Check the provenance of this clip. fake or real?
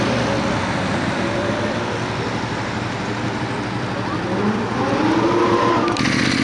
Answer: real